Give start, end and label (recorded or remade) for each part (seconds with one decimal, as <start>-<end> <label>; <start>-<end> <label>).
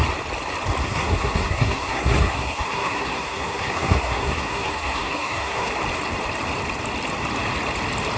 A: 0.0-0.8 recorded; 0.8-5.7 remade; 5.7-8.2 recorded